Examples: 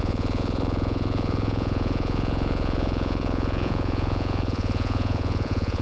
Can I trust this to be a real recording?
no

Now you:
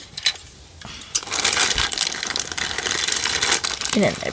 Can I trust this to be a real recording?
yes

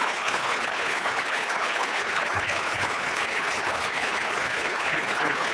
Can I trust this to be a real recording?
no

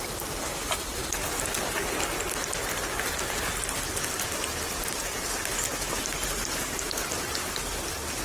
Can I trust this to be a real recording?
yes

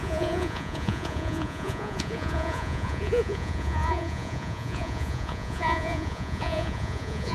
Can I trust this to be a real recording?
no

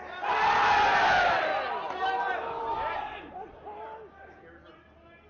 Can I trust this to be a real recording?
yes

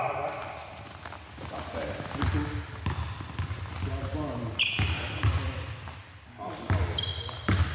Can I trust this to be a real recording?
yes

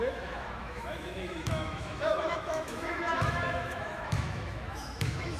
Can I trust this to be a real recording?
no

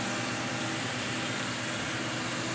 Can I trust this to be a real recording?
yes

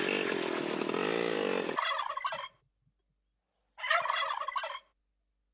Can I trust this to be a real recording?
yes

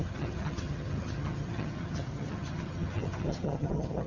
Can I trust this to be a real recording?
no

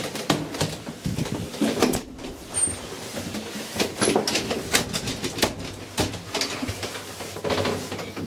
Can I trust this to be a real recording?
yes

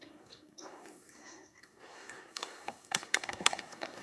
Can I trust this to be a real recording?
no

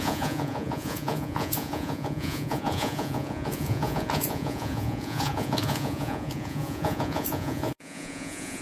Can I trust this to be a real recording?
no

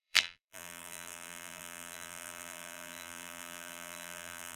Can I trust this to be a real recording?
no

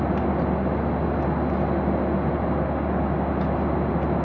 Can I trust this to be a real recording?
yes